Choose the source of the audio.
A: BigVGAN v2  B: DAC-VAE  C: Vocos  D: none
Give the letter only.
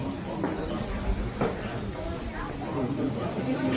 A